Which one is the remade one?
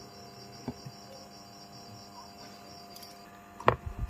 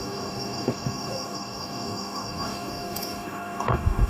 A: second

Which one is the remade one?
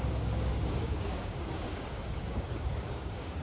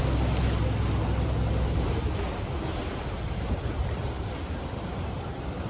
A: first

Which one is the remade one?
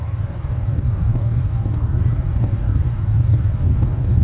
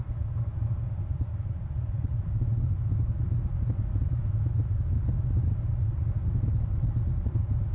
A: first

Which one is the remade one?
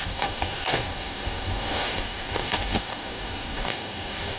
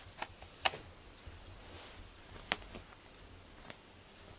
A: first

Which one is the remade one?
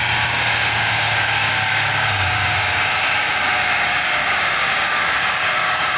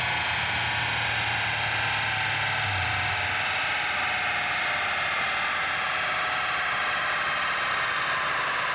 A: first